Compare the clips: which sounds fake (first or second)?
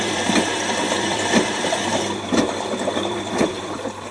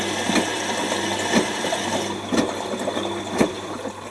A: first